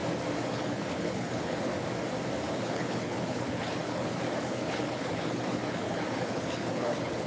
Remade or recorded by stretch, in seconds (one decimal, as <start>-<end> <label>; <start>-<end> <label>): 0.0-0.5 recorded; 0.5-1.7 remade; 1.7-2.5 recorded; 2.5-7.3 remade